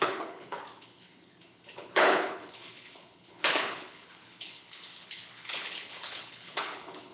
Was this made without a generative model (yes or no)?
no